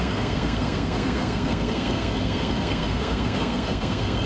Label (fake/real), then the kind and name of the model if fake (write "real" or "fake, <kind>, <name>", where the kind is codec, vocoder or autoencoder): fake, codec, SNAC